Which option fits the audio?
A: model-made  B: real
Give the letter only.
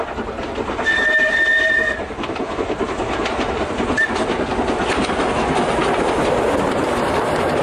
B